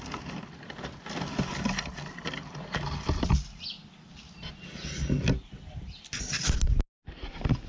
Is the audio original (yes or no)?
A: yes